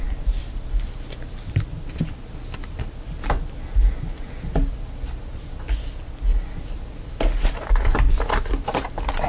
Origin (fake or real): real